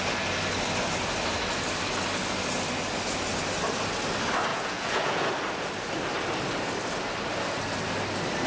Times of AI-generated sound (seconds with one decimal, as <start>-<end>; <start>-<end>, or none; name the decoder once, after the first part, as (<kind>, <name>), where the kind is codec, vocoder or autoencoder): 4.5-5.3 (vocoder, Vocos)